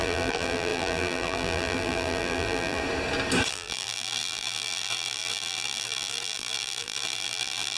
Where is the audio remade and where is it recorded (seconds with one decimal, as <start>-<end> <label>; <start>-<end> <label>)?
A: 0.0-2.8 remade; 2.8-3.5 recorded; 3.5-7.8 remade